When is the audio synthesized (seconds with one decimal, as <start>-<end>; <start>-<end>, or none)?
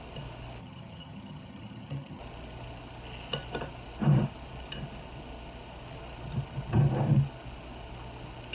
0.6-2.2